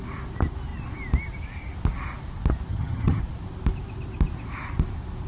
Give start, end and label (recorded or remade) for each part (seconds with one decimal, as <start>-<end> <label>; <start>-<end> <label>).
0.0-2.7 recorded; 2.7-3.2 remade; 3.2-5.3 recorded